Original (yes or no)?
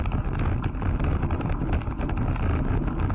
yes